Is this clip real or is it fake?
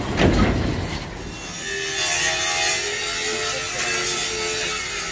real